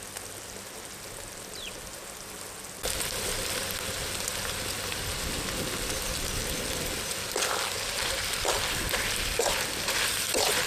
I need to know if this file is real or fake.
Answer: real